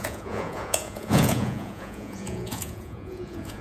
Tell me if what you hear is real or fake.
fake